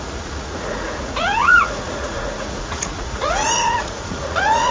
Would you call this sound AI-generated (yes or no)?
yes